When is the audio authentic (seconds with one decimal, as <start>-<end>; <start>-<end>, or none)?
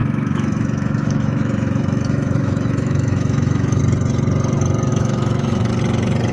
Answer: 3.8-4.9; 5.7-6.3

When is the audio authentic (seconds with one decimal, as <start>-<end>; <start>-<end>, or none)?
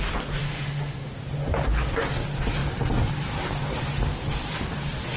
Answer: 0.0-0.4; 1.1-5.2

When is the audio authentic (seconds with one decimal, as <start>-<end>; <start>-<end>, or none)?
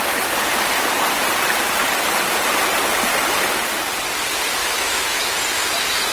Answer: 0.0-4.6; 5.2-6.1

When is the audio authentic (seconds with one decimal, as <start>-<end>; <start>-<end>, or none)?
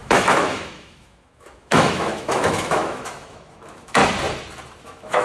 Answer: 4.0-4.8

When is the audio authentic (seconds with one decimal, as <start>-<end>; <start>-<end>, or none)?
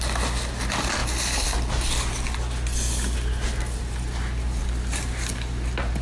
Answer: 0.0-6.0